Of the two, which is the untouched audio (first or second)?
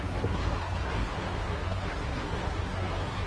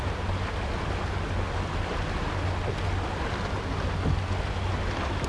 second